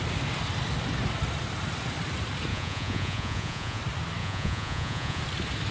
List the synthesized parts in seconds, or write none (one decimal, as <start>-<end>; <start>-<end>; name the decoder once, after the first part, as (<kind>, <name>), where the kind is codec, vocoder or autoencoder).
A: 2.5-3.8 (vocoder, Vocos); 4.2-5.2